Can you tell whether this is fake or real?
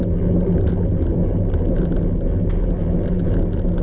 real